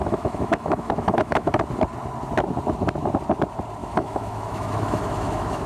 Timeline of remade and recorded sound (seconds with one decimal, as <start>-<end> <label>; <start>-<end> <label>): 0.0-1.6 remade; 1.6-3.8 recorded; 3.8-5.7 remade